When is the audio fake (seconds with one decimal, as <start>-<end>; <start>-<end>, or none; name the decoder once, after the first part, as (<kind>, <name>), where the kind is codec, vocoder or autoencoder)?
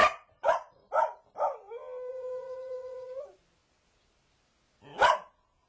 0.0-0.9 (vocoder, Vocos); 2.1-3.2